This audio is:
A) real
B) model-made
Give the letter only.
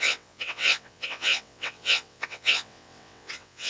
B